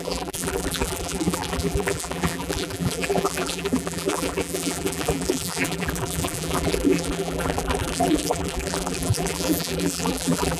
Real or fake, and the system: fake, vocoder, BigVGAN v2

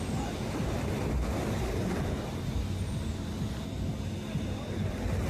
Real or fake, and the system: real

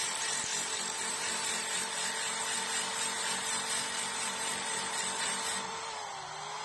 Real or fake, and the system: fake, vocoder, BigVGAN v2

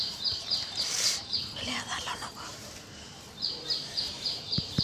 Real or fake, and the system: fake, vocoder, BigVGAN v2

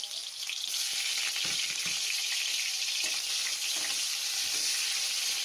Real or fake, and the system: fake, vocoder, BigVGAN v2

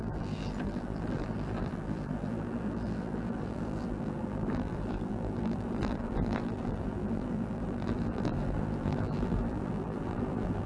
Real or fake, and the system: fake, vocoder, BigVGAN v2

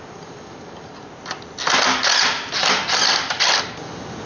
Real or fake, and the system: real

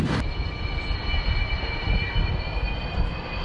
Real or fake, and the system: fake, vocoder, BigVGAN v2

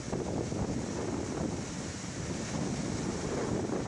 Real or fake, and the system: real